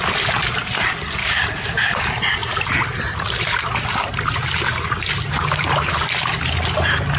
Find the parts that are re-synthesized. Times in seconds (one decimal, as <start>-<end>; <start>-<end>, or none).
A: 1.2-2.0